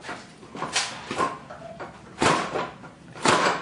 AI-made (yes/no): yes